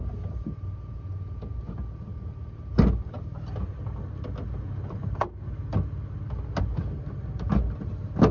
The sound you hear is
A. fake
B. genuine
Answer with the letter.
B